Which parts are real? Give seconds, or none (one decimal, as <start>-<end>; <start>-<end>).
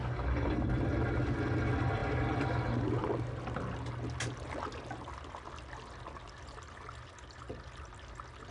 0.0-8.5